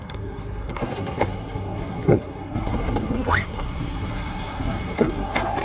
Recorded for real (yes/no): no